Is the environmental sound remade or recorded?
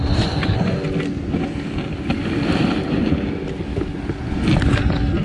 recorded